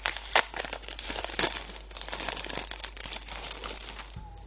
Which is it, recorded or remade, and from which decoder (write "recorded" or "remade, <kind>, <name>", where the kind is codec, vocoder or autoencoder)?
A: recorded